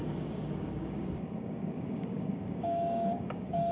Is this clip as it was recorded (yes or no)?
no